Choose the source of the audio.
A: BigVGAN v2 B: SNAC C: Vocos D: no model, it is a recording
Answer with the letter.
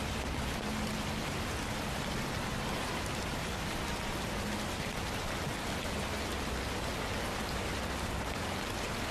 D